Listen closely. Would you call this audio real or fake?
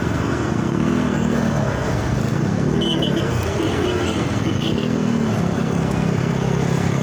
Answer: fake